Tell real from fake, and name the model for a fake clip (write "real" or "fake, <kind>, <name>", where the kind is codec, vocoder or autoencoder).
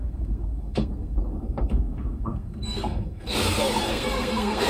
fake, codec, SNAC